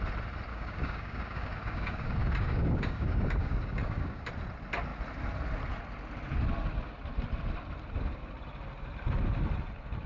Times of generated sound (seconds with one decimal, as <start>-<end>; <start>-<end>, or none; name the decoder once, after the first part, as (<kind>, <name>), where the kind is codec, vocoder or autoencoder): 0.5-4.3 (codec, DAC)